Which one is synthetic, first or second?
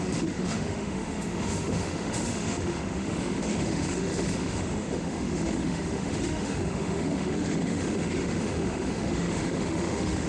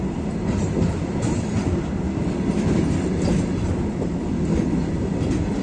first